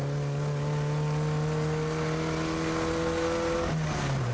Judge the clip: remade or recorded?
recorded